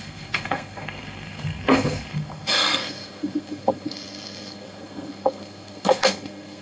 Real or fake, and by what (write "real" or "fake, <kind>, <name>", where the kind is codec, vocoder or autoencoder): fake, codec, SNAC